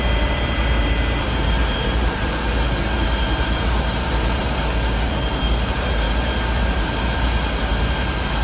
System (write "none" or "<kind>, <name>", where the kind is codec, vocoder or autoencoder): vocoder, BigVGAN v2